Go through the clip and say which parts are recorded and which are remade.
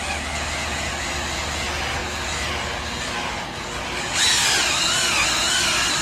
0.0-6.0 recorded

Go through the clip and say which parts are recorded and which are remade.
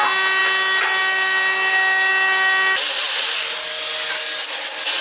0.0-5.0 recorded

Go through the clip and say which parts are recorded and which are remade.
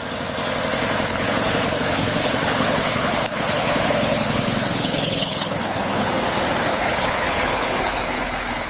0.0-1.1 recorded; 1.1-6.1 remade; 6.1-6.7 recorded; 6.7-8.7 remade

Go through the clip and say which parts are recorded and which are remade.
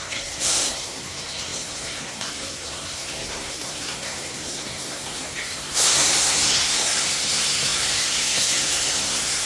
0.0-9.5 remade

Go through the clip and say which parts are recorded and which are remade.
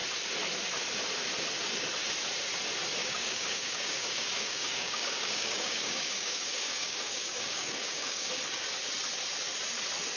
0.0-3.0 recorded; 3.0-8.3 remade; 8.3-10.2 recorded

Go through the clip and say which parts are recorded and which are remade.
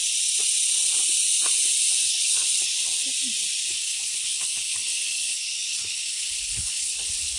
0.0-2.2 recorded; 2.2-2.6 remade; 2.6-3.7 recorded; 3.7-7.4 remade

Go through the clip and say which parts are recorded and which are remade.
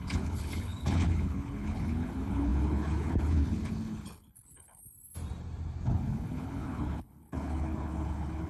0.0-4.8 remade; 4.8-5.9 recorded; 5.9-8.5 remade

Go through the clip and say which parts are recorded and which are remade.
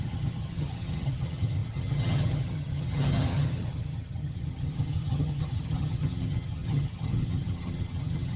0.0-8.4 remade